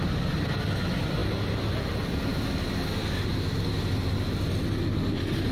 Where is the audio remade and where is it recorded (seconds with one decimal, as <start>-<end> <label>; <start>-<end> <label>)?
0.0-5.5 recorded